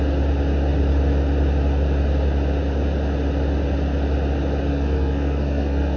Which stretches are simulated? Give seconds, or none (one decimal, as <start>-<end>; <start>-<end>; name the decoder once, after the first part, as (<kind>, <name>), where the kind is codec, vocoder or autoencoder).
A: 4.7-6.0 (codec, SNAC)